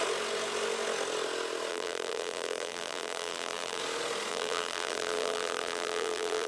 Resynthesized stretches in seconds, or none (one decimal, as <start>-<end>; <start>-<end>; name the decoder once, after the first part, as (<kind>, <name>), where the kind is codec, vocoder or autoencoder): 1.7-3.8 (vocoder, BigVGAN v2); 4.3-6.5